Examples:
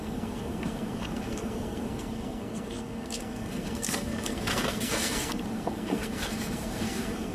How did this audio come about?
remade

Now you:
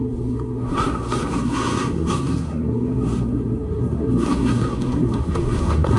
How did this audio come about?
remade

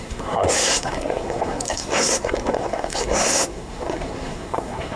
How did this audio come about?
remade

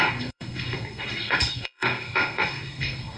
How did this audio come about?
remade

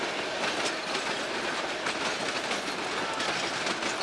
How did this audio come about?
recorded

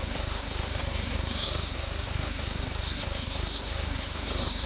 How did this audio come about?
remade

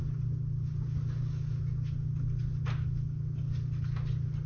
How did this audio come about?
recorded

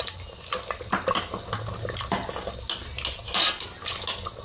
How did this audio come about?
recorded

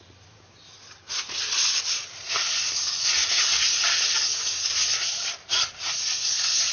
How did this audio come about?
recorded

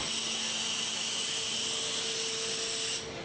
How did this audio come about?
recorded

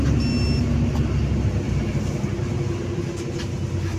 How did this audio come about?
recorded